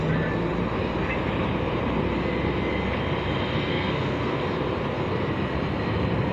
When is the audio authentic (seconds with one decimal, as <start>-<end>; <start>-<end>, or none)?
0.0-3.7; 4.4-6.3